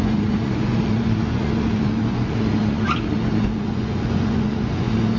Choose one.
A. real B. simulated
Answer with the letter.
B